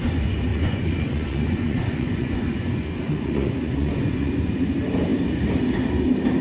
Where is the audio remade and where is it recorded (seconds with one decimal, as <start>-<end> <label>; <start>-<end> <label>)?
0.0-0.5 recorded; 0.5-4.3 remade; 4.3-6.4 recorded